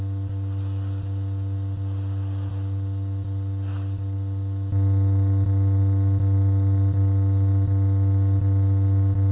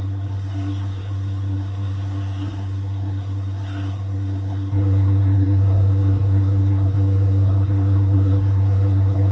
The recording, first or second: first